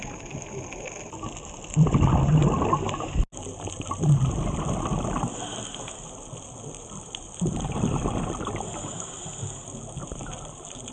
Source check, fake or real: real